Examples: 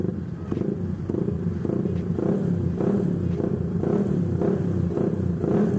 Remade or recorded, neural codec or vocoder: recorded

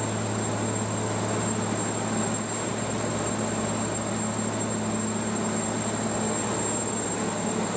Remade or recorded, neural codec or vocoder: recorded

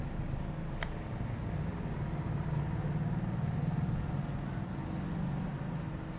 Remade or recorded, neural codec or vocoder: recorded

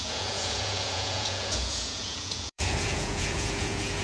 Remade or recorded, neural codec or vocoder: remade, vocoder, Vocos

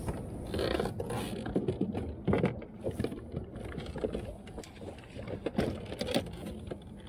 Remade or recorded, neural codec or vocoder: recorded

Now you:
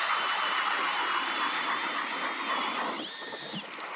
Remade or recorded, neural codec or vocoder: recorded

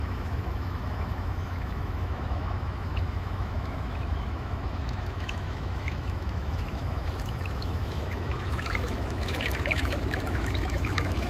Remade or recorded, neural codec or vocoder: remade, autoencoder, DAC-VAE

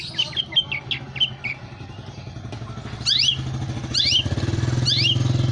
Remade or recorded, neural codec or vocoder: recorded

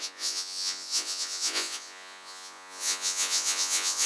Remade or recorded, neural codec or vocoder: remade, vocoder, Vocos